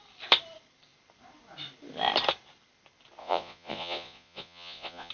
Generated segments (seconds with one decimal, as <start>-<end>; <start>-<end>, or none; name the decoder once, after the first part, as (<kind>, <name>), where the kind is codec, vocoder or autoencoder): 3.2-5.1 (vocoder, Vocos)